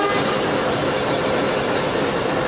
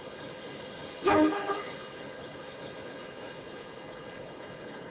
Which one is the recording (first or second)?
first